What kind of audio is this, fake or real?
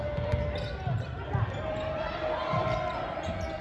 fake